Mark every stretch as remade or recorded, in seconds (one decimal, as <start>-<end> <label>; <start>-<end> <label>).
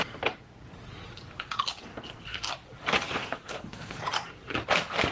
0.0-1.9 recorded; 1.9-2.5 remade; 2.5-3.2 recorded; 3.2-4.0 remade; 4.0-5.1 recorded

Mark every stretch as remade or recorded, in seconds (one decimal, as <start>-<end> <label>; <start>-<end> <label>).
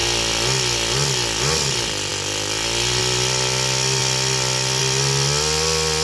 0.0-6.0 recorded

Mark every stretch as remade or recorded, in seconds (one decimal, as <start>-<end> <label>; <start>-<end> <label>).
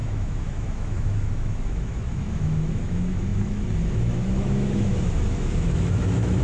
0.0-6.4 remade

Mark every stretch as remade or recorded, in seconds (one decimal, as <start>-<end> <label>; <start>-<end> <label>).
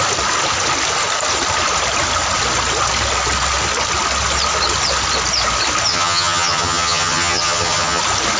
0.0-5.9 recorded; 5.9-8.0 remade; 8.0-8.4 recorded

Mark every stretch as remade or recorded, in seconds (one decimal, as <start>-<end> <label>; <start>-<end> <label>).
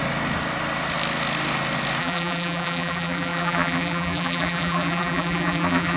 0.0-2.0 recorded; 2.0-6.0 remade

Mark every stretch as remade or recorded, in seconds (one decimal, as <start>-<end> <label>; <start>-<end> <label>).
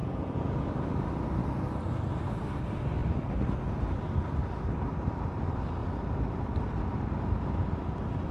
0.0-0.7 remade; 0.7-8.3 recorded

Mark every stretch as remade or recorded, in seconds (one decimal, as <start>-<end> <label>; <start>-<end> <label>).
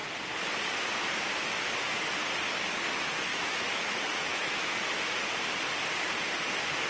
0.0-3.3 recorded; 3.3-5.1 remade; 5.1-6.9 recorded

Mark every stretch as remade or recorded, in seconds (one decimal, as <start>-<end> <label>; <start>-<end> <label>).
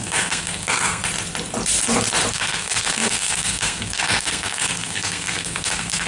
0.0-1.0 remade; 1.0-2.3 recorded; 2.3-6.1 remade